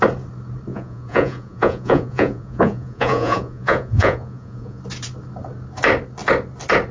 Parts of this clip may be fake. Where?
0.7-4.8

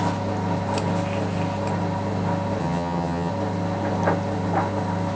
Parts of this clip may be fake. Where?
2.6-3.3